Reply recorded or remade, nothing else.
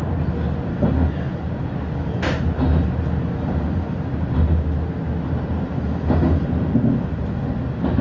recorded